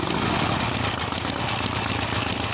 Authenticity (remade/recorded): recorded